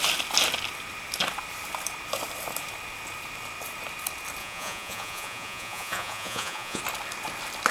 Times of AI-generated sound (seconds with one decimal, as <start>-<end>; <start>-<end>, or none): 4.4-6.8